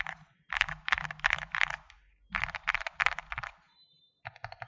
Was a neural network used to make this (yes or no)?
no